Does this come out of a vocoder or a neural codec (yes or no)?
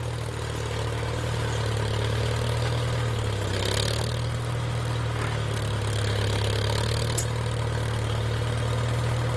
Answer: no